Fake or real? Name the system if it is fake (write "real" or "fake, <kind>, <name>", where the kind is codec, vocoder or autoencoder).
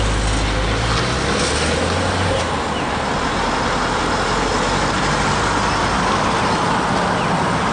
real